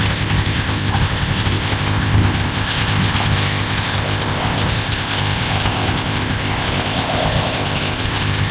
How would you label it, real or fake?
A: fake